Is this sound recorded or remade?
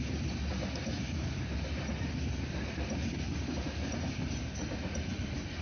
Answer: recorded